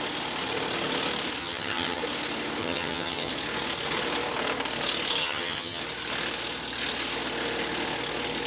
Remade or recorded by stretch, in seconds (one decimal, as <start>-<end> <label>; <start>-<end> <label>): 0.0-1.4 recorded; 1.4-2.0 remade; 2.0-2.6 recorded; 2.6-3.3 remade; 3.3-5.2 recorded; 5.2-5.8 remade; 5.8-8.5 recorded